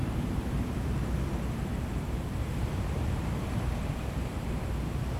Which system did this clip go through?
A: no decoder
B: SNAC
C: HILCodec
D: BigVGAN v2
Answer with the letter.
D